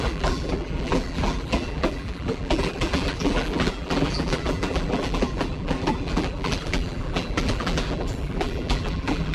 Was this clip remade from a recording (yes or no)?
yes